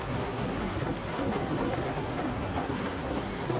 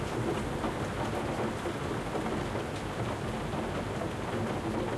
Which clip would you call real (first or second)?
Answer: second